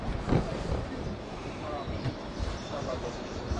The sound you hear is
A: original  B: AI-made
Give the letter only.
B